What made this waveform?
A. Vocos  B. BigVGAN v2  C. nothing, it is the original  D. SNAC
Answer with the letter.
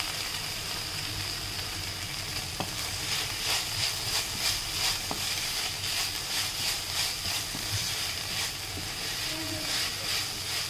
C